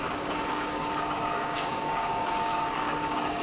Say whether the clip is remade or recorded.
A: remade